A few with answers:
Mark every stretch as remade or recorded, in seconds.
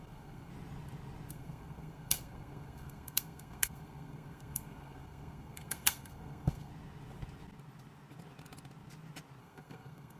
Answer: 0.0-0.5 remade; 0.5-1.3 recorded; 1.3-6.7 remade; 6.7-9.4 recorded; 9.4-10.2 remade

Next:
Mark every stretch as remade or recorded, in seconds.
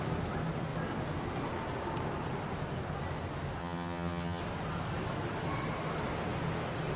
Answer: 0.0-3.6 recorded; 3.6-4.4 remade; 4.4-7.0 recorded